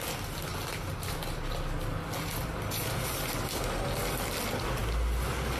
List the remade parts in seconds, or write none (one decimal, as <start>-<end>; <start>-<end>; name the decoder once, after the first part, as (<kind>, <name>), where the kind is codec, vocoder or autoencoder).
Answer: none